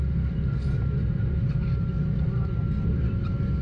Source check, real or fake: real